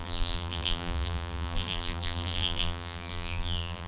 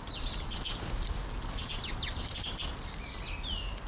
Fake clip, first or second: first